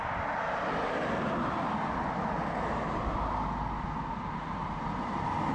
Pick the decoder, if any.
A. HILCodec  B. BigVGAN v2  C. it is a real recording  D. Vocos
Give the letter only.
C